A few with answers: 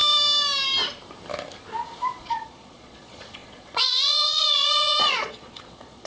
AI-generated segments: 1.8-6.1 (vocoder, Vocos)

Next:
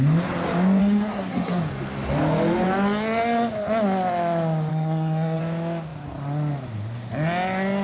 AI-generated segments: 0.8-1.6 (codec, SNAC); 4.7-5.4

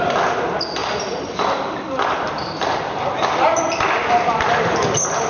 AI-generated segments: 0.0-5.3 (vocoder, BigVGAN v2)

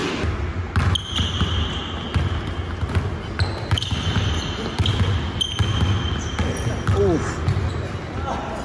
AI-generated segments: none

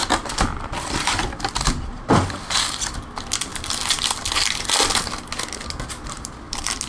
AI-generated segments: 0.0-2.8 (vocoder, BigVGAN v2)

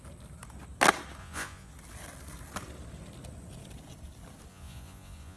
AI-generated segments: 1.2-1.7 (vocoder, Vocos); 4.5-5.4